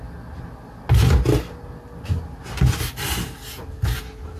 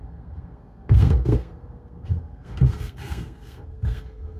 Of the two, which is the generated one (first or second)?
second